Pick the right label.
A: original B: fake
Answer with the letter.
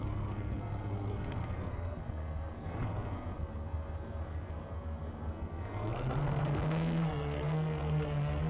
B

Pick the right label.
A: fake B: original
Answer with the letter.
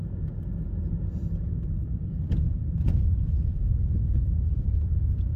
A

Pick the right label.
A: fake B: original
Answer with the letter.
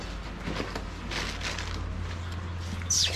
B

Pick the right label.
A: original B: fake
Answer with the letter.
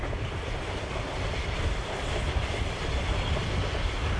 A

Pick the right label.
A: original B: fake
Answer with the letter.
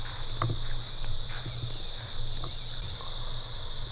A